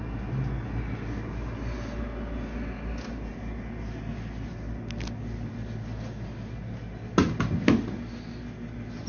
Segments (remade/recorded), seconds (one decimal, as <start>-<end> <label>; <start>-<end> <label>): 0.0-9.1 recorded